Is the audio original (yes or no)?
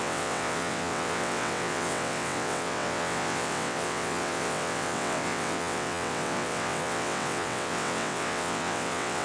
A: no